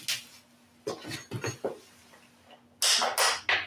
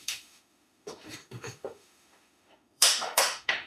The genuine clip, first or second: first